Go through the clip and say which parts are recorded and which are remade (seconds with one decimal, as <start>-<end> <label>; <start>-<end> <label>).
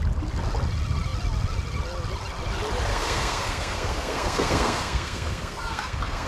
0.0-2.9 recorded; 2.9-6.3 remade